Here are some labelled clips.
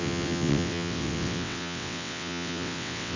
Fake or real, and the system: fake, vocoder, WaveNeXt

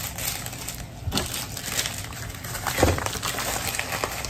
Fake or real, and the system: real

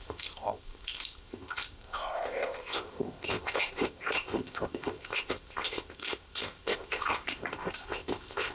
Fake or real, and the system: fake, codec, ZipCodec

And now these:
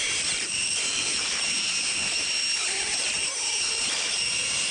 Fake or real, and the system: fake, vocoder, BigVGAN v2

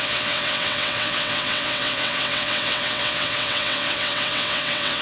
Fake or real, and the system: fake, vocoder, WaveNeXt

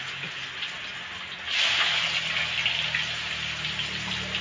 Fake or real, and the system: real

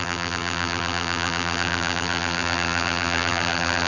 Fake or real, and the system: fake, vocoder, BigVGAN v2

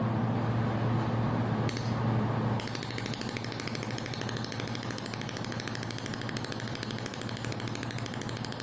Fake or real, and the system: real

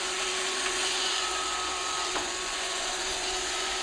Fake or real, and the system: fake, vocoder, Vocos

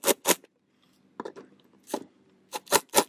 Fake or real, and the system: real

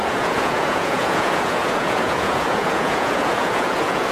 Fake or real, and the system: fake, vocoder, Vocos